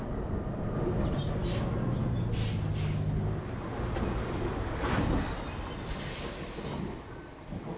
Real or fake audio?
real